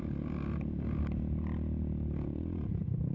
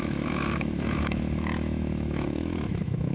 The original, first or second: first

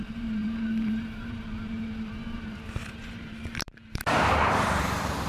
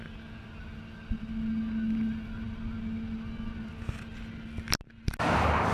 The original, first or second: second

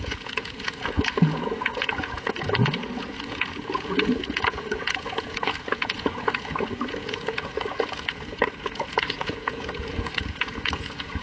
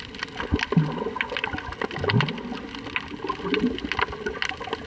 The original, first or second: second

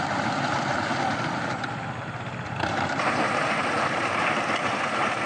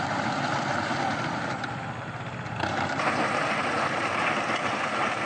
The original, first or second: second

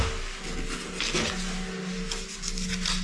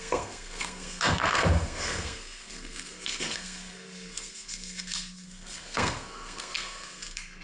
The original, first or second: first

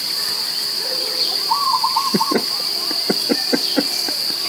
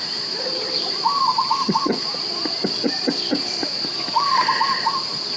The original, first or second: first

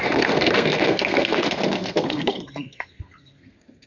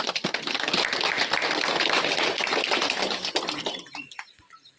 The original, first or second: second